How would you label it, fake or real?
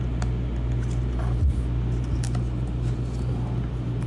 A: real